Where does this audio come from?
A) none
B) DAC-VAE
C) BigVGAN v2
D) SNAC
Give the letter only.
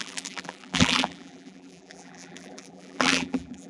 C